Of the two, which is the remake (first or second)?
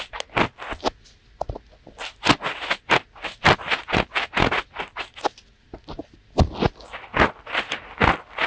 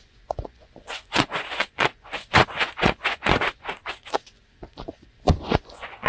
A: second